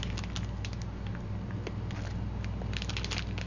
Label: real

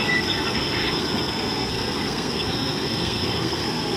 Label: fake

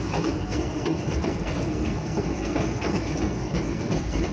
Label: fake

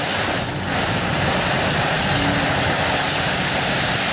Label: real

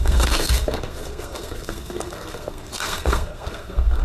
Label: fake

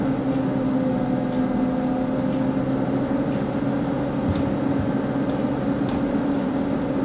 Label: real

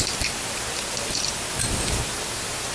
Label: real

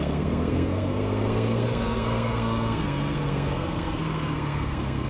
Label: fake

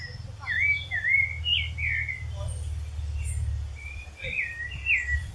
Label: real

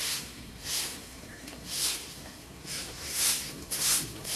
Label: fake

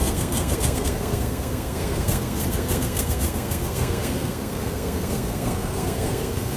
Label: fake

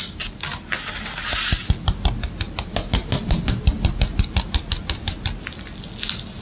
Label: real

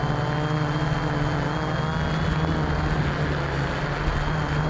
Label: real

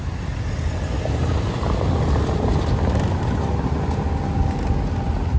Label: real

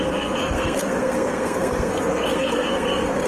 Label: fake